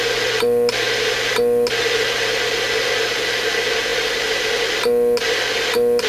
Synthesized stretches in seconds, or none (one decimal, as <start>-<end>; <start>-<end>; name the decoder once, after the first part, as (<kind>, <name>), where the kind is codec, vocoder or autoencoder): 3.9-4.6 (vocoder, BigVGAN v2)